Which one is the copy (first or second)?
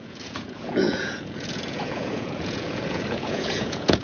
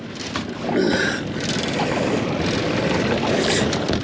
first